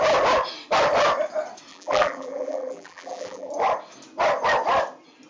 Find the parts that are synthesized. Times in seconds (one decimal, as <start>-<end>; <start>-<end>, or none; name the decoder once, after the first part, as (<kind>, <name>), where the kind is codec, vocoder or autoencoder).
1.7-3.5 (vocoder, BigVGAN v2)